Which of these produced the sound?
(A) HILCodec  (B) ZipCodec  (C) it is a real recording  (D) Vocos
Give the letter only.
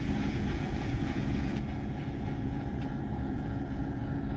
D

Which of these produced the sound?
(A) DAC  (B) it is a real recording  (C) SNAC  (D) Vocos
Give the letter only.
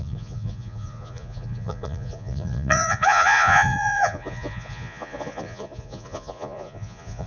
D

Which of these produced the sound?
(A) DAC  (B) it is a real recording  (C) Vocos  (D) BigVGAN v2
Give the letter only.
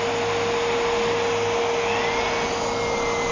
B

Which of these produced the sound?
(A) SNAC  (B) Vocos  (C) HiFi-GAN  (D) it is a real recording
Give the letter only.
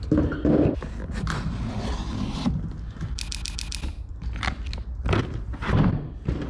D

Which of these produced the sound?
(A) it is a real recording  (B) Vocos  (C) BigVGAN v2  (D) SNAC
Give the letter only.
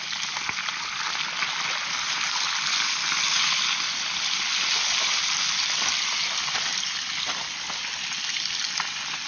A